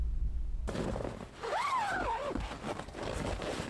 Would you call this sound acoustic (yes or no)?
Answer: yes